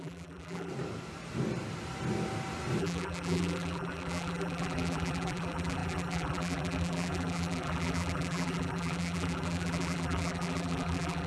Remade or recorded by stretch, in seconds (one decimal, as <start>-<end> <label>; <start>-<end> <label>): 0.0-0.7 remade; 0.7-2.8 recorded; 2.8-11.3 remade